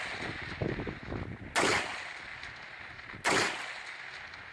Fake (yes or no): no